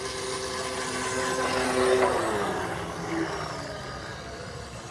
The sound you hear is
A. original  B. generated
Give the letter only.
A